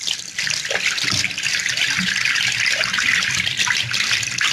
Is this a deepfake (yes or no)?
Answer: no